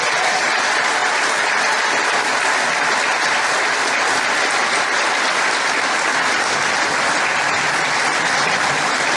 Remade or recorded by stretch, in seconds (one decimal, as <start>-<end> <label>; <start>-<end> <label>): 0.0-9.2 recorded